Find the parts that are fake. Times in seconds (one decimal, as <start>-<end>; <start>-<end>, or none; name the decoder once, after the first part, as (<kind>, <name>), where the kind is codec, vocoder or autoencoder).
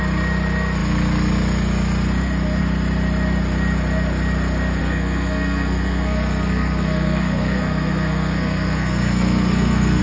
4.8-10.0 (codec, SNAC)